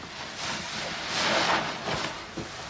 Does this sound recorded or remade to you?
recorded